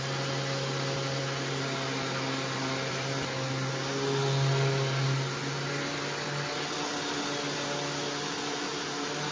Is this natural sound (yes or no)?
yes